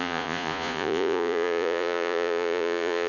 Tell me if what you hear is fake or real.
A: fake